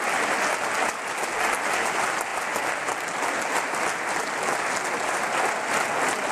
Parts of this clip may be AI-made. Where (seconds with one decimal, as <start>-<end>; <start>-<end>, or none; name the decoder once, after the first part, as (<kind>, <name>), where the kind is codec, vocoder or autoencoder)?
none